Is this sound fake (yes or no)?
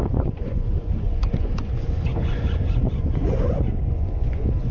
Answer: yes